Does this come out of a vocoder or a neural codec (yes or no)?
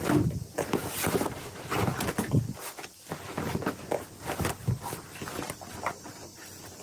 yes